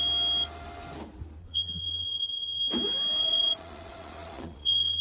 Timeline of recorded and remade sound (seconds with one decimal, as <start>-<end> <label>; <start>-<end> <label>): 0.0-1.4 recorded; 1.4-2.6 remade; 2.6-3.2 recorded; 3.2-5.0 remade